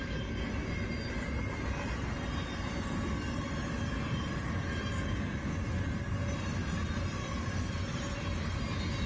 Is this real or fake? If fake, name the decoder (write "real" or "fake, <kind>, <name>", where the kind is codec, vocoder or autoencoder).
real